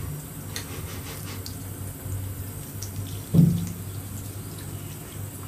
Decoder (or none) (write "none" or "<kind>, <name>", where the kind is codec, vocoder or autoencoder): none